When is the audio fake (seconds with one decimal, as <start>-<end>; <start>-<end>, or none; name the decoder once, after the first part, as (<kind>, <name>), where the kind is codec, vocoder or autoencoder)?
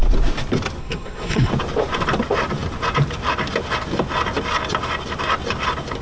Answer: 0.8-1.5 (codec, SNAC)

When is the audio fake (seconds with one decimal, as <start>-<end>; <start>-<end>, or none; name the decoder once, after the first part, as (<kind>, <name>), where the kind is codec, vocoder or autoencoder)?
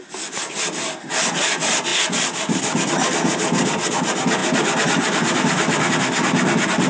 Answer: none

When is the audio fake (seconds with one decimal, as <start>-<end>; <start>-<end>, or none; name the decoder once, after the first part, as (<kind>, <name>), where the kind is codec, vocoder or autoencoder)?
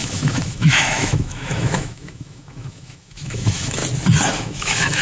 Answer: 0.0-3.8 (autoencoder, DAC-VAE); 4.3-5.0